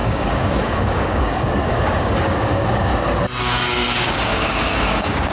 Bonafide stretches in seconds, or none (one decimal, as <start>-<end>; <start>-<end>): 2.9-3.4